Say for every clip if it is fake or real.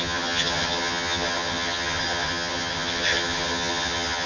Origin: fake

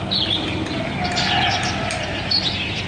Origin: real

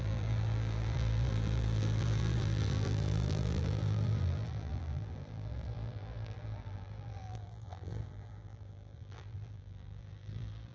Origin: fake